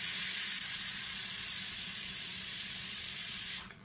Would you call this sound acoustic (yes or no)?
no